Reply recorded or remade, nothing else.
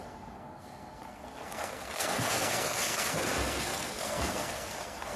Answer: remade